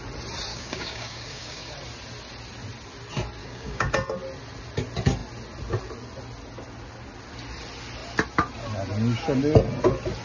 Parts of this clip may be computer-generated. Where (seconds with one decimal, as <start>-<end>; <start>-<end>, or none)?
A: 0.5-1.7; 3.4-3.9